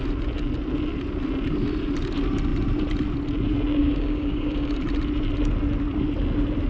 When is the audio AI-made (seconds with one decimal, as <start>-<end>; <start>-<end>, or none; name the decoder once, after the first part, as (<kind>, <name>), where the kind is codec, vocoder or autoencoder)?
3.8-4.8 (codec, DAC)